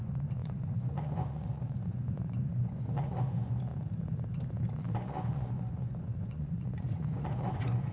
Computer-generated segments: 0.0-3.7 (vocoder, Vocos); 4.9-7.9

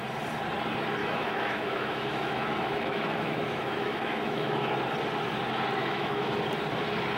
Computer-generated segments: 1.0-4.7 (autoencoder, DAC-VAE); 5.8-6.3

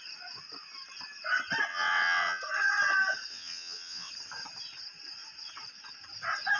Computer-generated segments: 1.7-2.4 (vocoder, WaveNeXt); 3.3-4.1